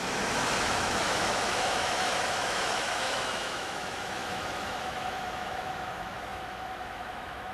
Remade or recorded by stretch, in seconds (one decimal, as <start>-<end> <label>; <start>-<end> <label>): 0.0-7.5 remade